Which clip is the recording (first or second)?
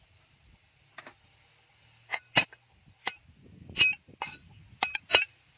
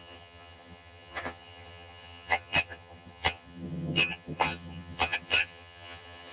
first